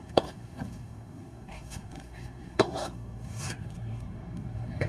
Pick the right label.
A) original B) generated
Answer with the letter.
B